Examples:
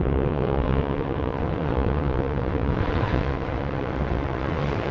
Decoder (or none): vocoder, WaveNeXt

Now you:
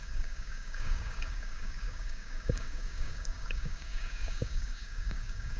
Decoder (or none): codec, DAC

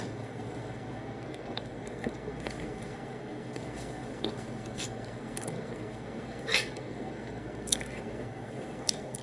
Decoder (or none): codec, SNAC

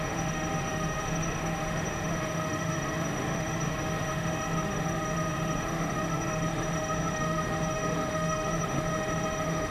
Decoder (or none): autoencoder, DAC-VAE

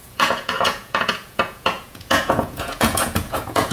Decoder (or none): vocoder, Vocos